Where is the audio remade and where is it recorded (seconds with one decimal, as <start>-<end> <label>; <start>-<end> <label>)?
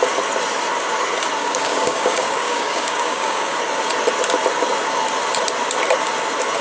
0.0-1.4 recorded; 1.4-3.6 remade; 3.6-6.6 recorded